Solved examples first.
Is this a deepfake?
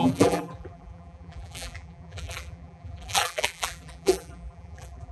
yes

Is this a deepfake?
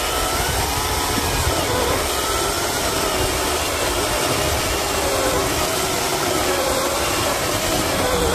no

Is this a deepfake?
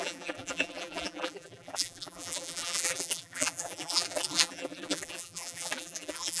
yes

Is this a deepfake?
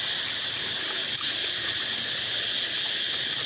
yes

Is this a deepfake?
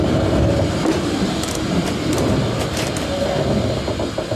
no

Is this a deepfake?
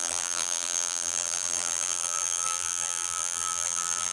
yes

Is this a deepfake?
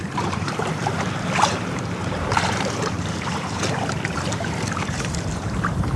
yes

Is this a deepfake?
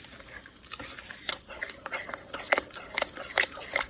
yes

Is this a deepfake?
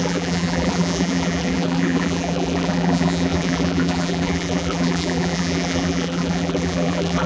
yes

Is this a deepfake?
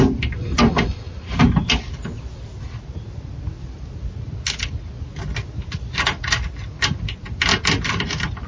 no